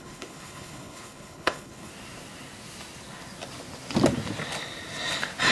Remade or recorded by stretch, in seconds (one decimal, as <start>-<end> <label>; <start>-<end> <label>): 0.0-1.9 remade; 1.9-5.5 recorded